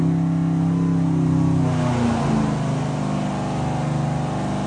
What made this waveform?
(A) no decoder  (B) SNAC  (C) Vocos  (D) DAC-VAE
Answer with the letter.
A